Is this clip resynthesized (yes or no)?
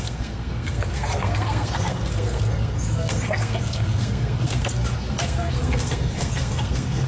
yes